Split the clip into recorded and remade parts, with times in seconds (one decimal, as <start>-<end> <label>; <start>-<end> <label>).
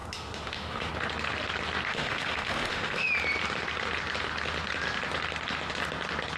0.0-0.9 remade; 0.9-1.9 recorded; 1.9-3.1 remade; 3.1-6.4 recorded